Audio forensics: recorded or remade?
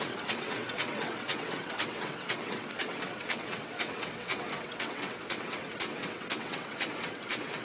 remade